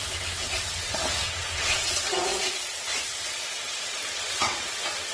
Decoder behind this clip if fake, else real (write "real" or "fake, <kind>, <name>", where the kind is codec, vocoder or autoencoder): fake, vocoder, WaveNeXt